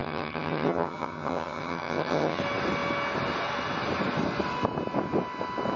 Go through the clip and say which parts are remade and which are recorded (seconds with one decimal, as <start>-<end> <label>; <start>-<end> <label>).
0.0-2.4 remade; 2.4-5.8 recorded